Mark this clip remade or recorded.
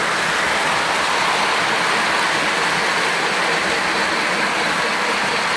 recorded